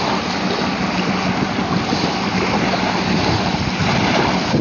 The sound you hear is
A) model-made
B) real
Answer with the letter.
B